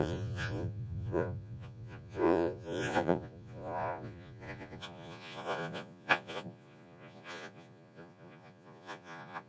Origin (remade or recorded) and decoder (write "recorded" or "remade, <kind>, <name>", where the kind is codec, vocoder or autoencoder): remade, vocoder, Vocos